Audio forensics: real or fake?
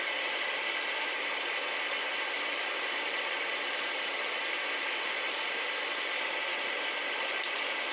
real